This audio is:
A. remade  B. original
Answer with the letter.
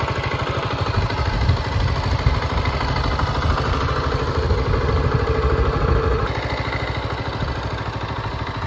B